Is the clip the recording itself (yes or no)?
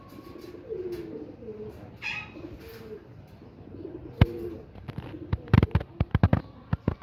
yes